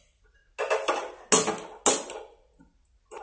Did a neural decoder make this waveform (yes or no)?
no